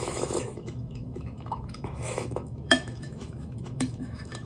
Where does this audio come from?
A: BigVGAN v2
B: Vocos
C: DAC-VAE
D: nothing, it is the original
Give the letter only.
C